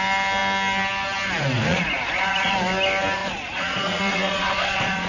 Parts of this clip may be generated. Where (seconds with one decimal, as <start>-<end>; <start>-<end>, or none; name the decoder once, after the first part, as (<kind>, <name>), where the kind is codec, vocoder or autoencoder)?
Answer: 1.7-2.5 (vocoder, Vocos); 3.2-5.1

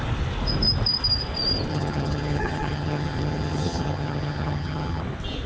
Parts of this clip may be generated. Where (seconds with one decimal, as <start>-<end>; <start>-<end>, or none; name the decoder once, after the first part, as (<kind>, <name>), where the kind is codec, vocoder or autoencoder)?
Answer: 1.7-5.0 (vocoder, HiFi-GAN)

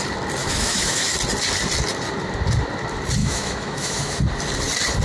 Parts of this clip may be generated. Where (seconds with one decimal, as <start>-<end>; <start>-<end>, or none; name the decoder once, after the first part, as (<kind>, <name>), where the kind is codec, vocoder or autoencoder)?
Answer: 0.4-1.1 (autoencoder, DAC-VAE); 3.2-4.2

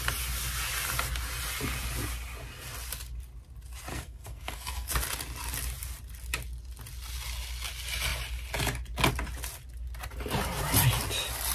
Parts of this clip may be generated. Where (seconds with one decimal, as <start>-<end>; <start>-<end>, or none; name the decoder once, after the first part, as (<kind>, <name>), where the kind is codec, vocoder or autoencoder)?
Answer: 3.9-4.9 (codec, SNAC)

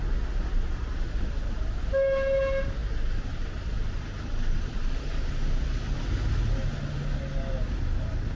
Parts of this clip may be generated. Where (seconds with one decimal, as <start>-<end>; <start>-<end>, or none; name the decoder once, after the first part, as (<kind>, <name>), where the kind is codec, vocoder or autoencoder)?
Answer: none